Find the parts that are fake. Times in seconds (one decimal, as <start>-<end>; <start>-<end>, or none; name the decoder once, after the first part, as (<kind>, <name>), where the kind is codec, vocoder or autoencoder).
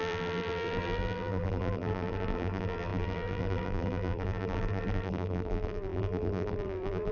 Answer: 0.0-7.1 (vocoder, BigVGAN v2)